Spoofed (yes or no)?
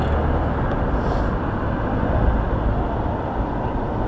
no